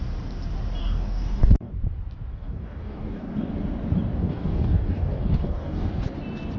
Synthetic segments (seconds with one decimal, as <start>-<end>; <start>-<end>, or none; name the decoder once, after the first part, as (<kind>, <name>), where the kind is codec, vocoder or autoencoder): 0.8-1.7 (codec, DAC); 2.3-3.5; 4.2-5.9